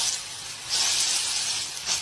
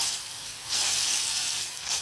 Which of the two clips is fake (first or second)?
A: second